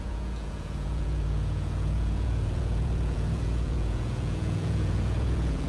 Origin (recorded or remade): remade